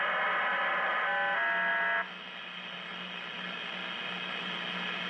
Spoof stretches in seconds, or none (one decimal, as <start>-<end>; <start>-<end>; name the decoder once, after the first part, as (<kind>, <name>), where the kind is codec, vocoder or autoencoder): none